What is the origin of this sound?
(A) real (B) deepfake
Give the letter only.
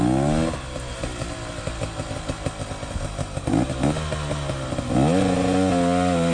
A